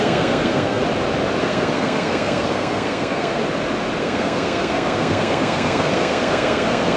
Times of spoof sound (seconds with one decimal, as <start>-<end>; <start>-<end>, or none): 0.0-0.8; 1.4-3.4; 4.0-7.0